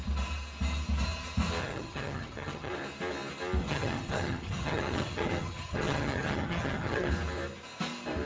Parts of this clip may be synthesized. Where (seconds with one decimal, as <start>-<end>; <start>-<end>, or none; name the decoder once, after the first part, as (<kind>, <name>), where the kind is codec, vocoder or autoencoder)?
1.6-2.7 (vocoder, HiFi-GAN); 3.6-7.1